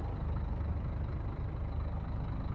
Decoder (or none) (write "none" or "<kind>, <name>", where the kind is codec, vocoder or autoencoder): none